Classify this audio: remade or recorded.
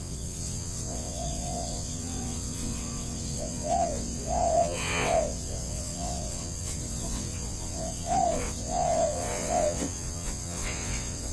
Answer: remade